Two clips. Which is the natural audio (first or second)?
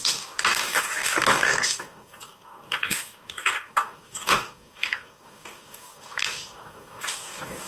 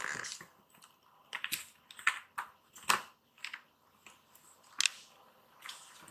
second